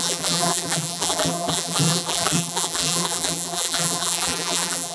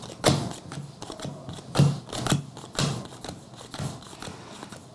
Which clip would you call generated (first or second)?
first